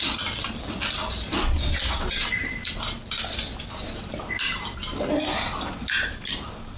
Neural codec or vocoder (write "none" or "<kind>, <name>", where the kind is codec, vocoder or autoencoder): none